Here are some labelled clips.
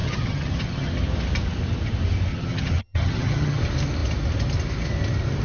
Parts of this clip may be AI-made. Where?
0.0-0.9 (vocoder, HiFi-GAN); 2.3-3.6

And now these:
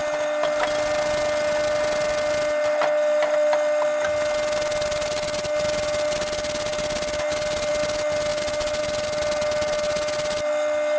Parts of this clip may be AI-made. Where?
none

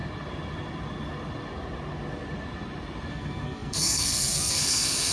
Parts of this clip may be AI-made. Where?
3.1-5.1 (codec, SNAC)

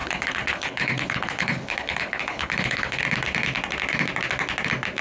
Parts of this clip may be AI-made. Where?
0.0-3.0 (codec, HILCodec)

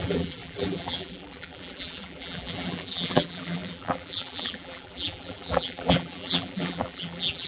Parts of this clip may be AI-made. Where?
0.0-7.5 (vocoder, BigVGAN v2)